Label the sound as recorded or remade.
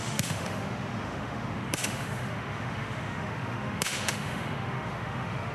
remade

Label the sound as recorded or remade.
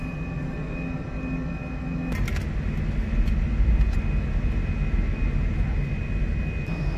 recorded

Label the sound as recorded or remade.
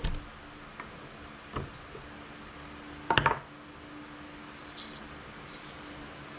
recorded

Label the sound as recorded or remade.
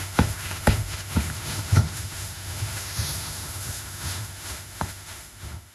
remade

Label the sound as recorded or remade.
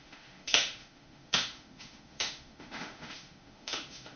remade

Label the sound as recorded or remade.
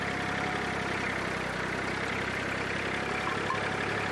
recorded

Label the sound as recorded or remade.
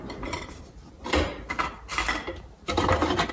recorded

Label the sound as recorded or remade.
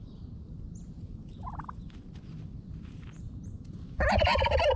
recorded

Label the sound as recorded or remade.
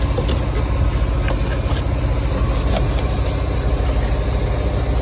recorded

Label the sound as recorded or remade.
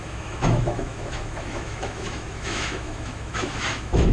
remade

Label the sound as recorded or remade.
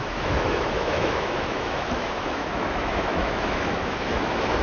remade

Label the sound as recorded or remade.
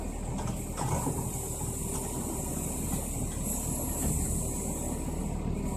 recorded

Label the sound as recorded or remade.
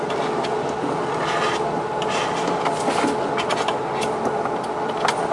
recorded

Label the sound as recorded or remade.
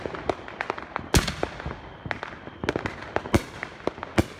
recorded